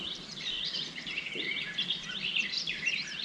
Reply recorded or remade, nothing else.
remade